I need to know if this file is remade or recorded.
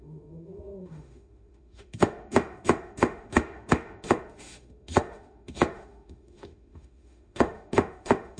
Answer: remade